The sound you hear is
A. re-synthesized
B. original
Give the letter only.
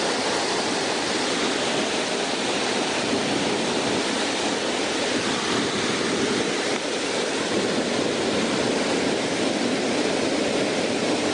A